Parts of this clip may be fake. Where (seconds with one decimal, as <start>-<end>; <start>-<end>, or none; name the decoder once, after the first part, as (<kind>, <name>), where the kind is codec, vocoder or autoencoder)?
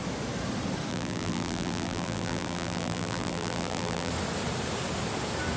0.9-4.1 (vocoder, BigVGAN v2)